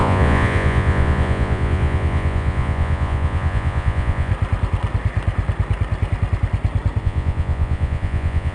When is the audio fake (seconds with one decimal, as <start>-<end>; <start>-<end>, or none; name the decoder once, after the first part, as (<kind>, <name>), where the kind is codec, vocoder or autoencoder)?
0.0-4.3 (vocoder, Vocos); 7.0-8.5